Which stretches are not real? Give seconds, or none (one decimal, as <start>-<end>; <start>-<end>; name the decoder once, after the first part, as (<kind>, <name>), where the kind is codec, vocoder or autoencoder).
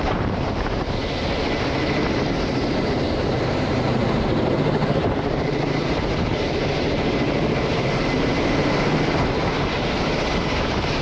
0.0-1.0 (vocoder, BigVGAN v2); 2.9-11.0